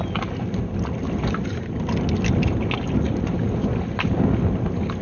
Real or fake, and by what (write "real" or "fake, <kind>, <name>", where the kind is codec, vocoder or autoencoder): real